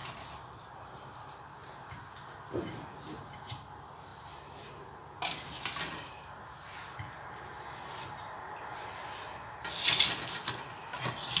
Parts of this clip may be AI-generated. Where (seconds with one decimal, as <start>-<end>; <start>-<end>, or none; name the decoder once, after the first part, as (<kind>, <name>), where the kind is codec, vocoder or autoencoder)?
none